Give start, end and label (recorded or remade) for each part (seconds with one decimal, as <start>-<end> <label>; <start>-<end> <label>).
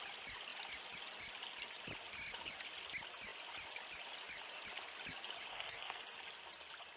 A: 0.0-5.5 recorded; 5.5-6.0 remade; 6.0-7.0 recorded